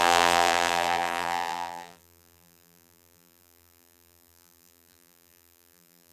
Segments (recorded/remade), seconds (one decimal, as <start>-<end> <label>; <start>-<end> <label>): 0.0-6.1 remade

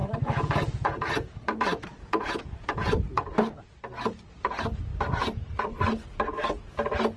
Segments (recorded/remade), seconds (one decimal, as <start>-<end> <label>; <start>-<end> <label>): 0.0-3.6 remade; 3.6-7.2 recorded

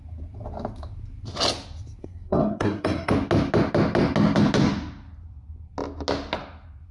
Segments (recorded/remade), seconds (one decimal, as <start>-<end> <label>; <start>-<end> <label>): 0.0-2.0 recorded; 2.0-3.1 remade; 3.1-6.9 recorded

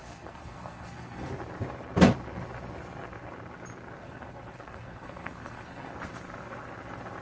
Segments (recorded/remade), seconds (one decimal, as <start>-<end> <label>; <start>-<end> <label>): 0.0-1.3 remade; 1.3-4.0 recorded; 4.0-5.9 remade; 5.9-7.2 recorded

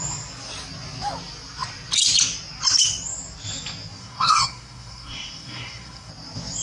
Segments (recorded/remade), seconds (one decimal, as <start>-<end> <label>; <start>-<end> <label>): 0.0-4.0 recorded; 4.0-6.1 remade; 6.1-6.6 recorded

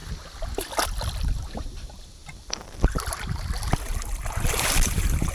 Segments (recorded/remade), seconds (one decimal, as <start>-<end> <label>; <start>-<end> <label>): 0.0-1.5 recorded; 1.5-2.2 remade; 2.2-4.2 recorded; 4.2-5.3 remade